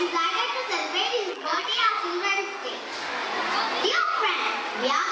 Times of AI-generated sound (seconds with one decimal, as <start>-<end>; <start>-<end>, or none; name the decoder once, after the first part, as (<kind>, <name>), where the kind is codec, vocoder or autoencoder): 1.3-1.9 (vocoder, BigVGAN v2)